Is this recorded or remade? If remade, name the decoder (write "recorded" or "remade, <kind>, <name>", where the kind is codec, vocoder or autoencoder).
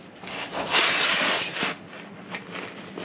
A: recorded